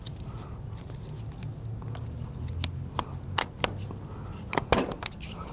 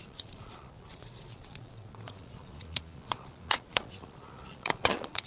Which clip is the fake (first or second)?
second